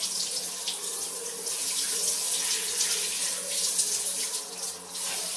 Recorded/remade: recorded